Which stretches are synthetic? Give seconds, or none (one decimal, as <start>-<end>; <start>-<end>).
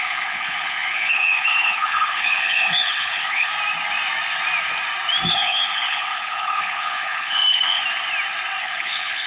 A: 0.0-3.5; 5.3-7.8; 8.6-9.3